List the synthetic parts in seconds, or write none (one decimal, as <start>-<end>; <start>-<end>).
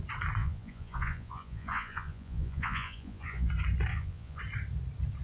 0.4-3.5; 3.9-4.4